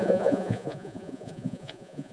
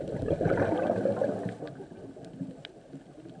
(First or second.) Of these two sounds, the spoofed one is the first